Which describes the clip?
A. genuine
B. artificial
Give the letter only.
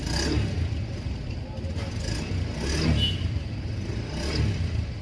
A